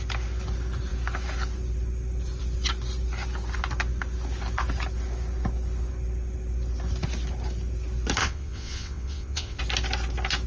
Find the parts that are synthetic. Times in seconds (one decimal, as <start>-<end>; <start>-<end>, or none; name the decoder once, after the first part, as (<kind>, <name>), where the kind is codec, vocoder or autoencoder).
8.2-9.6 (vocoder, WaveNeXt)